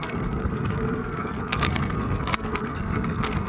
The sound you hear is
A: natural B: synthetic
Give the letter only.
B